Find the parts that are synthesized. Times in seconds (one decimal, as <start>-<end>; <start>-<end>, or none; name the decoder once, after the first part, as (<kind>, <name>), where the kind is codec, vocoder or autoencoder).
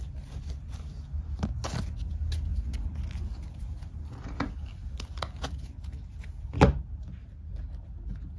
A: none